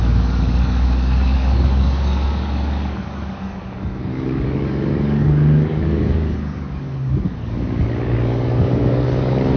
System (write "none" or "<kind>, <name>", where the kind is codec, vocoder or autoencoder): codec, DAC